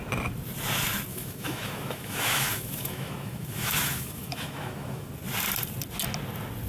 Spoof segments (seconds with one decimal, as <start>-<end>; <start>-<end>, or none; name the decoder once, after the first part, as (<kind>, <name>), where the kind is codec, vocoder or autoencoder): 1.1-5.1 (autoencoder, DAC-VAE)